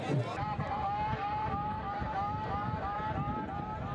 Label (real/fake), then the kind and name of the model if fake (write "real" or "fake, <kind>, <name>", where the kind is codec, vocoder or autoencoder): real